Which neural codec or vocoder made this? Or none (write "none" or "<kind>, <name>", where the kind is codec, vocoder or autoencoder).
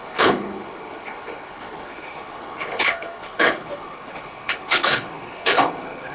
codec, HILCodec